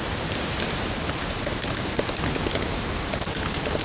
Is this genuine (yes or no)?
yes